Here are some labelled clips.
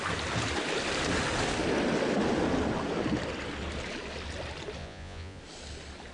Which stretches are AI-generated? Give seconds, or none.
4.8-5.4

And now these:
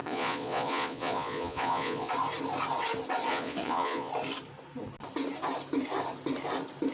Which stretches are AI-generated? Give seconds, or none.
0.0-2.1; 3.3-4.1

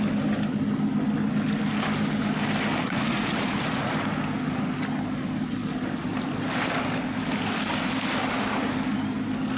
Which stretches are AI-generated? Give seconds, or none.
2.7-3.9

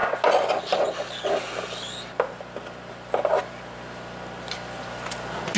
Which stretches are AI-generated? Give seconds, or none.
none